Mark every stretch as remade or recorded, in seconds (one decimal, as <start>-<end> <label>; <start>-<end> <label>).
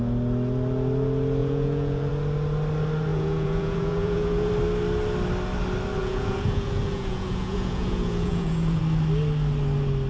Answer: 0.0-1.4 recorded; 1.4-2.1 remade; 2.1-3.1 recorded; 3.1-4.5 remade; 4.5-6.0 recorded; 6.0-8.8 remade; 8.8-10.1 recorded